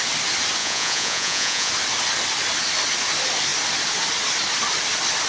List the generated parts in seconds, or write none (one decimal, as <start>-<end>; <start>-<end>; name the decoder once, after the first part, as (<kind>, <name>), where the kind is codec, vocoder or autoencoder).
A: 0.6-1.7 (vocoder, Vocos)